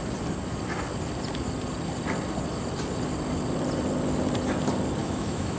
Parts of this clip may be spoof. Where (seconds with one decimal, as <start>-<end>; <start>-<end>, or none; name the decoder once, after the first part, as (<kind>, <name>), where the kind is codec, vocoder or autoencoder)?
5.0-5.6 (autoencoder, DAC-VAE)